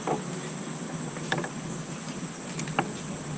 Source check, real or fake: real